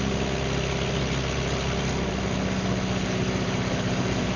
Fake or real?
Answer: real